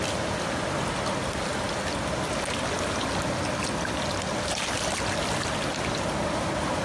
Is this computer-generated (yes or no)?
no